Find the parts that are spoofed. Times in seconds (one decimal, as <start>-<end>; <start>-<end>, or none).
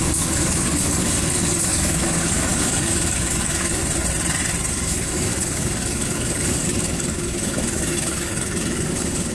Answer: 0.0-3.8; 4.7-9.3